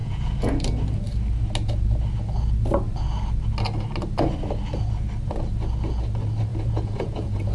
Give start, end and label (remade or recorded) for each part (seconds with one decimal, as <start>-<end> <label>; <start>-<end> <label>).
0.0-0.5 remade; 0.5-6.5 recorded; 6.5-7.5 remade

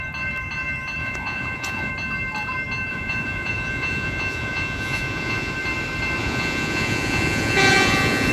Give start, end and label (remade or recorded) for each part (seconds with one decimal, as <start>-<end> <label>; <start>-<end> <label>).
0.0-1.0 recorded; 1.0-1.9 remade; 1.9-2.9 recorded; 2.9-5.5 remade; 5.5-6.2 recorded; 6.2-8.3 remade

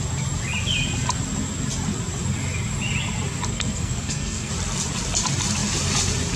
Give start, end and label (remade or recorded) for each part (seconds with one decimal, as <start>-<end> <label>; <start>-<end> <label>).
0.0-3.5 recorded; 3.5-4.5 remade; 4.5-6.4 recorded

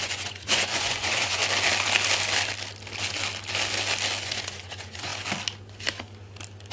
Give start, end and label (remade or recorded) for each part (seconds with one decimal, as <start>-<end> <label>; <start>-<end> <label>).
0.0-1.4 remade; 1.4-4.2 recorded; 4.2-5.1 remade; 5.1-6.7 recorded

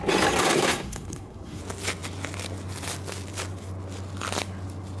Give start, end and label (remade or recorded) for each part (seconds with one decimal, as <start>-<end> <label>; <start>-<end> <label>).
0.0-0.4 recorded; 0.4-1.6 remade; 1.6-5.0 recorded

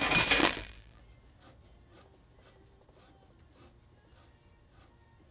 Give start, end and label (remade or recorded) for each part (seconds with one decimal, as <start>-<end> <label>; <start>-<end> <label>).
0.0-0.4 recorded; 0.4-1.0 remade; 1.0-5.3 recorded